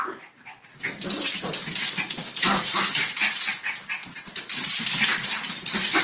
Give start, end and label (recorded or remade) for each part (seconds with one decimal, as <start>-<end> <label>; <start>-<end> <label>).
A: 0.0-6.0 recorded

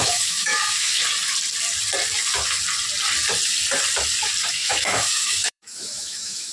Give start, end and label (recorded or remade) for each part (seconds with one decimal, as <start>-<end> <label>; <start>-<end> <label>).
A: 0.0-1.0 remade; 1.0-4.5 recorded; 4.5-6.5 remade

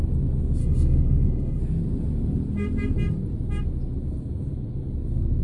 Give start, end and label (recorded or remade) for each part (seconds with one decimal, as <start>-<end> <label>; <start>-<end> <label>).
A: 0.0-0.6 recorded; 0.6-1.6 remade; 1.6-5.4 recorded